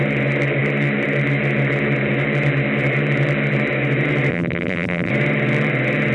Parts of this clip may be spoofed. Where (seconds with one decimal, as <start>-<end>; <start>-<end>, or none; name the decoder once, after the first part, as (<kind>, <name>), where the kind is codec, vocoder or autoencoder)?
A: 4.3-5.1 (vocoder, BigVGAN v2)